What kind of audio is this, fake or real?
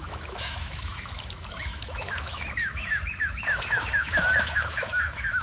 fake